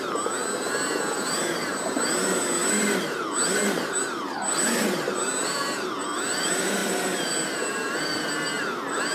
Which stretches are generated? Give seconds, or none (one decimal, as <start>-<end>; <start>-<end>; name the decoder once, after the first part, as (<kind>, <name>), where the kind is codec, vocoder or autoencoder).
none